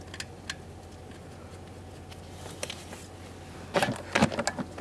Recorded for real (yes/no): yes